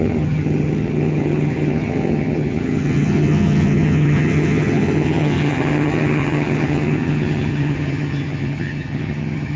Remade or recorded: remade